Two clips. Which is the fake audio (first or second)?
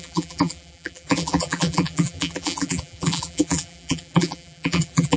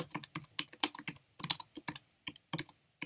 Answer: first